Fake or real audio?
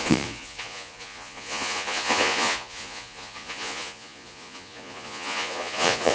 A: fake